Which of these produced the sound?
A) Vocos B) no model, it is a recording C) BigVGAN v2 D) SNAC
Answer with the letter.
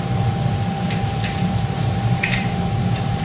C